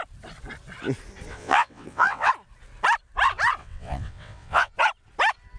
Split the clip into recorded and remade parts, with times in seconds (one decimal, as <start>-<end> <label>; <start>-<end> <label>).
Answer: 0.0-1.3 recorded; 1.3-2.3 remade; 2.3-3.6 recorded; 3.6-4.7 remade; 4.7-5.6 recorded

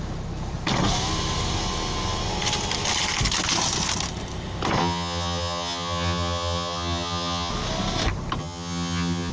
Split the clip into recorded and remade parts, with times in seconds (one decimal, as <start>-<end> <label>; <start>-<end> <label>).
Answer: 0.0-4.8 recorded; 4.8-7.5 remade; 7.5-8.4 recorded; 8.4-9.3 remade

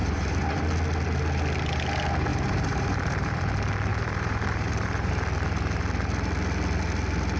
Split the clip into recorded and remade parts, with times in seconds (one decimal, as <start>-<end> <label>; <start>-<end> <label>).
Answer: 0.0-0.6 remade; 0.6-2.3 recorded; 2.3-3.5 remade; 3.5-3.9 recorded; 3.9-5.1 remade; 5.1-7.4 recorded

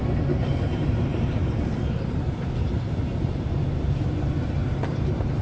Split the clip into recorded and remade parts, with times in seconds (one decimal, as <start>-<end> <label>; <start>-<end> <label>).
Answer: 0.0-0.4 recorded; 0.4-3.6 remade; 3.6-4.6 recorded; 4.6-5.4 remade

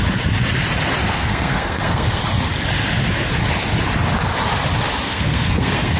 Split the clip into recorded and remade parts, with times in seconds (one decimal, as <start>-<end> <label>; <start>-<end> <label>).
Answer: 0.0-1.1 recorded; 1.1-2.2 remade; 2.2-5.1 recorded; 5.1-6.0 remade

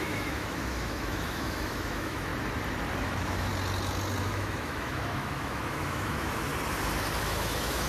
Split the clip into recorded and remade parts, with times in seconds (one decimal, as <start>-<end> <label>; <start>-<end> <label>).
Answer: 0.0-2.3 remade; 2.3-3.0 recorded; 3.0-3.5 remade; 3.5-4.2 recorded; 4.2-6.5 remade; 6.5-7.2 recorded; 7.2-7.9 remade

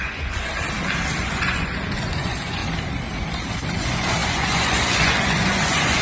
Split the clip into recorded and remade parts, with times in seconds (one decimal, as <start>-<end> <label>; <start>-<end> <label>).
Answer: 0.0-0.5 remade; 0.5-1.2 recorded; 1.2-2.6 remade; 2.6-3.6 recorded; 3.6-6.0 remade

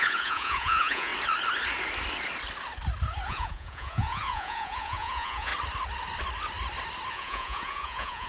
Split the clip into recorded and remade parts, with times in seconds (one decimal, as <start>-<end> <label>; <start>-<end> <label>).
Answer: 0.0-1.1 remade; 1.1-3.3 recorded; 3.3-5.5 remade; 5.5-7.1 recorded; 7.1-8.3 remade